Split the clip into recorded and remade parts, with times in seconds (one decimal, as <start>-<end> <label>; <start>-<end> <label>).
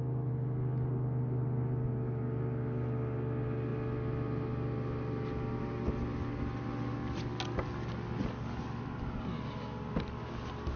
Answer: 0.0-10.8 recorded